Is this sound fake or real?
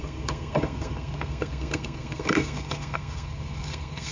fake